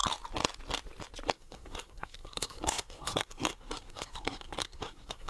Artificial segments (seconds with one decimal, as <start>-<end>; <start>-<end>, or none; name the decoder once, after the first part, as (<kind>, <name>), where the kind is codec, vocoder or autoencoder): 1.3-5.3 (codec, SNAC)